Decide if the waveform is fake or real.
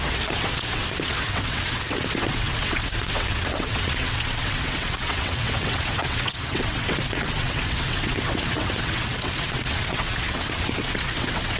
fake